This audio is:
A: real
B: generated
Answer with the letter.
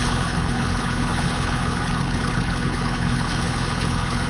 B